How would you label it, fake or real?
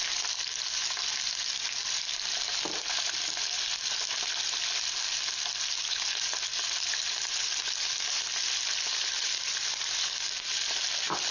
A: real